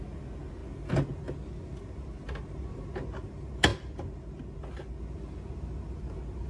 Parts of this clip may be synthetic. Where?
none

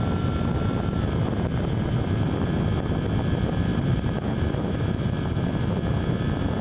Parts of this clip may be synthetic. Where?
3.7-5.4 (vocoder, BigVGAN v2)

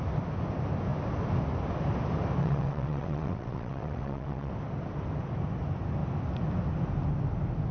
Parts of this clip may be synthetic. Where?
2.4-4.5 (vocoder, WaveNeXt)

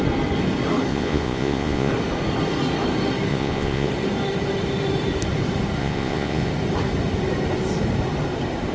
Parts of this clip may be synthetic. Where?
0.9-1.9 (vocoder, Vocos); 3.3-3.9; 5.8-6.5

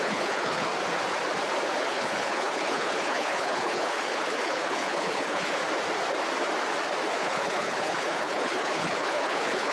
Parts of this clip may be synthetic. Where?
0.0-0.7 (codec, HILCodec); 1.8-5.6; 7.2-9.7

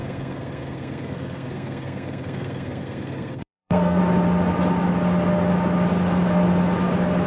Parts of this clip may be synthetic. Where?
0.0-4.0 (codec, SNAC)